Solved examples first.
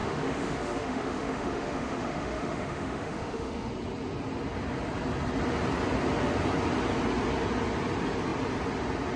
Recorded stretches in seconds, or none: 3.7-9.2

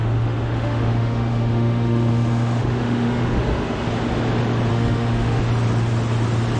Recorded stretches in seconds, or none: 3.9-4.7; 5.4-6.6

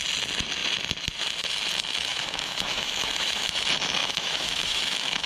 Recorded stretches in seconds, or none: 0.0-2.1; 3.5-4.0

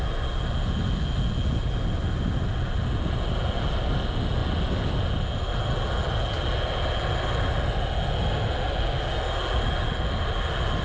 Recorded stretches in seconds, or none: 0.0-10.8